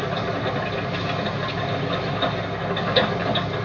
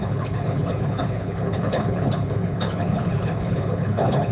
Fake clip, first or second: second